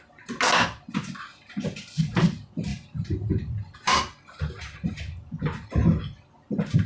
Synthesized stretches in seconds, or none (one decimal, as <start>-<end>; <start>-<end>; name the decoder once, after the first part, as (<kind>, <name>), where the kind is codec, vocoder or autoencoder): 2.7-6.0 (vocoder, BigVGAN v2)